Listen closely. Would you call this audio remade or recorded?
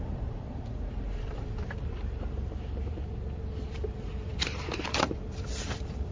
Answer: remade